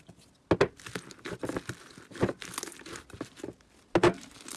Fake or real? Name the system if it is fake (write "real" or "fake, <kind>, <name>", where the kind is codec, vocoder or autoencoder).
real